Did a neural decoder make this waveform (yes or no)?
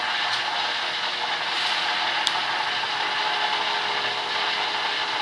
no